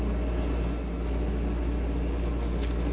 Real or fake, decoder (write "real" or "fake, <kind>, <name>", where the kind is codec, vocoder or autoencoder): real